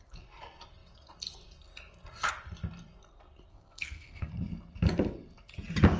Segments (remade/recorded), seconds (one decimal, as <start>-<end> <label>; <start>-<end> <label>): 0.0-3.5 recorded; 3.5-4.3 remade; 4.3-6.0 recorded

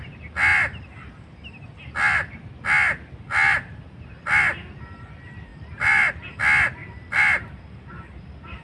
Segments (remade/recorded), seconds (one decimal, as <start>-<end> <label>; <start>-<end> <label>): 0.0-5.5 recorded; 5.5-6.1 remade; 6.1-6.8 recorded; 6.8-8.2 remade; 8.2-8.6 recorded

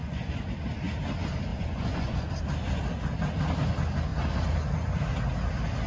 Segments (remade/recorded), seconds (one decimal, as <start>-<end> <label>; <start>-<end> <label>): 0.0-0.5 remade; 0.5-1.5 recorded; 1.5-2.3 remade; 2.3-5.9 recorded

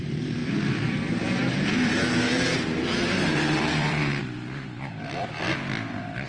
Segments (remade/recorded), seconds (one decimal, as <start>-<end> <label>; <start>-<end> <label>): 0.0-0.4 recorded; 0.4-4.2 remade; 4.2-6.3 recorded

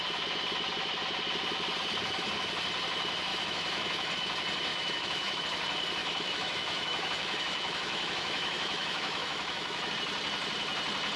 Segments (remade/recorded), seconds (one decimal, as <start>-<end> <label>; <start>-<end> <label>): 0.0-3.3 recorded; 3.3-4.1 remade; 4.1-4.7 recorded; 4.7-5.4 remade; 5.4-6.0 recorded; 6.0-9.9 remade; 9.9-11.2 recorded

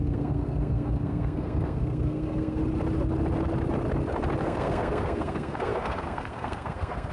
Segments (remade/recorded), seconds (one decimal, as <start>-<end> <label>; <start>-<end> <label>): 0.0-2.6 remade; 2.6-4.4 recorded; 4.4-7.1 remade

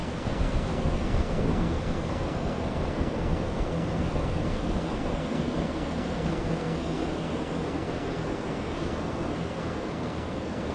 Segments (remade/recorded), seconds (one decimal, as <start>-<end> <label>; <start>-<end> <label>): 0.0-10.7 remade